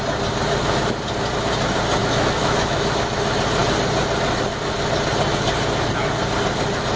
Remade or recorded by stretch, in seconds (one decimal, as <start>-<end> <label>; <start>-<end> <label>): 0.0-2.0 recorded; 2.0-3.0 remade; 3.0-7.0 recorded